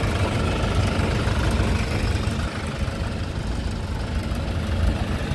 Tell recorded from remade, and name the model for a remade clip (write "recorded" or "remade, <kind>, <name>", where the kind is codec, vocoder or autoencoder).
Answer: recorded